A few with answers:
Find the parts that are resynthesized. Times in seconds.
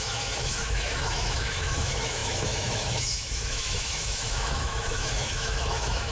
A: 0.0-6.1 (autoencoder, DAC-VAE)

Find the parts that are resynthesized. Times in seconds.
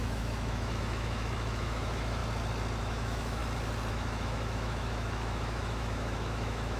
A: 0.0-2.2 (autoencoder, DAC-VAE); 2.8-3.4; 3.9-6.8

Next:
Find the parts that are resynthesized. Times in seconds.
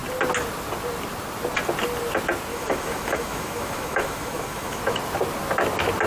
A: 2.5-4.8 (autoencoder, DAC-VAE)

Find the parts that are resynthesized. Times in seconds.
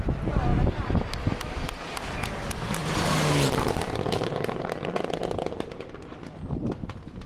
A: none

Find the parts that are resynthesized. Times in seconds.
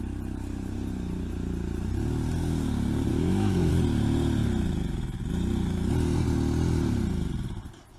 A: 3.1-3.7 (autoencoder, DAC-VAE)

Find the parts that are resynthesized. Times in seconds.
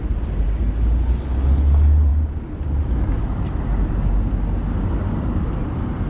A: none